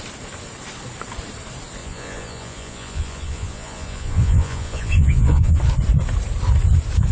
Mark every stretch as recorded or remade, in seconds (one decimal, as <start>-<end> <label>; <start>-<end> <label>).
0.0-1.8 recorded; 1.8-5.6 remade; 5.6-7.1 recorded